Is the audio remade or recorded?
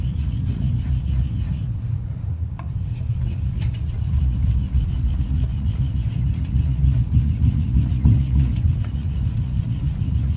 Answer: remade